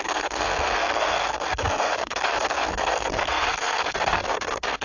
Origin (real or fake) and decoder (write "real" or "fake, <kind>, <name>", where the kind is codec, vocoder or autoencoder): fake, codec, SNAC